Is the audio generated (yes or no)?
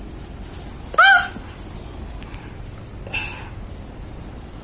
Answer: no